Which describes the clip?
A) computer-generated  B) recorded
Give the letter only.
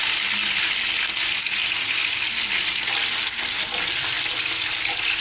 B